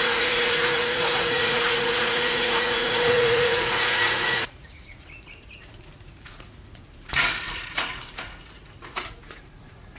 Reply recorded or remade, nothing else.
remade